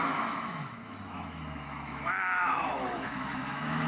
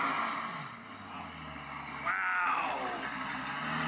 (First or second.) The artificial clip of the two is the first